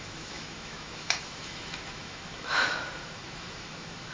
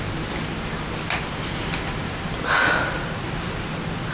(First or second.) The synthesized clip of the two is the first